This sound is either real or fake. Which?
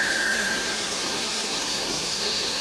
fake